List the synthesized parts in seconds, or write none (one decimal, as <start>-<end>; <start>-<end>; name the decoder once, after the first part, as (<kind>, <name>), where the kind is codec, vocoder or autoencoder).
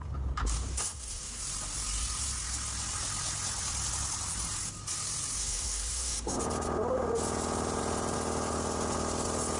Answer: 0.7-1.4 (codec, SNAC); 5.4-6.4